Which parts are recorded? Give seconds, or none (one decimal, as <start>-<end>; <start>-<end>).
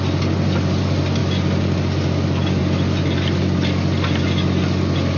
0.0-5.2